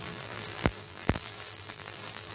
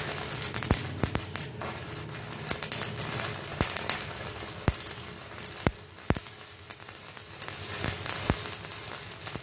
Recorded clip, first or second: second